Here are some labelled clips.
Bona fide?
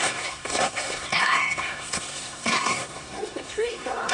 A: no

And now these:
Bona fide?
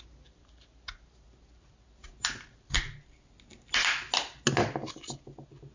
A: yes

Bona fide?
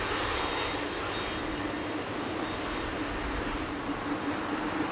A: yes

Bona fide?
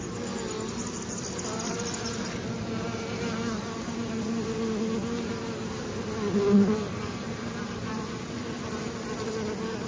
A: yes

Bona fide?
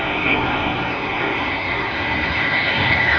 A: no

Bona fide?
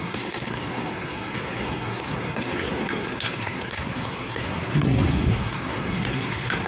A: no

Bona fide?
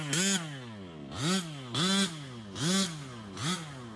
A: yes